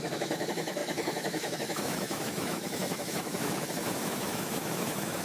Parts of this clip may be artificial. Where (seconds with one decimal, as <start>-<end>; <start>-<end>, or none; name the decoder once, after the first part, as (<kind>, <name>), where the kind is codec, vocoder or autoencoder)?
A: 0.0-5.2 (autoencoder, DAC-VAE)